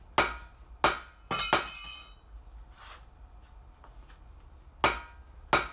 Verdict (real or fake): real